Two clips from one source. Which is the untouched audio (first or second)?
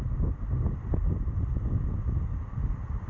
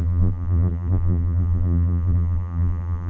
first